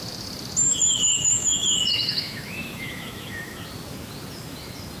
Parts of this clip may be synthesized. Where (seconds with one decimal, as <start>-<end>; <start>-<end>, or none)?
0.6-3.6

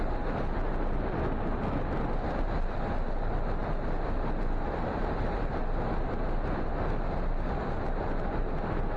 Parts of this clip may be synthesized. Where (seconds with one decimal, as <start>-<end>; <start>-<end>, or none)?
none

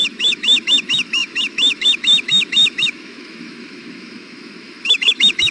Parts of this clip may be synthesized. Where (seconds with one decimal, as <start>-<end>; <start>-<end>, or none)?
0.0-5.5

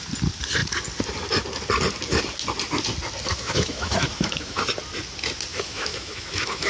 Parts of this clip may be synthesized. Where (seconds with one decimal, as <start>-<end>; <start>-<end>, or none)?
3.3-4.6; 5.5-6.7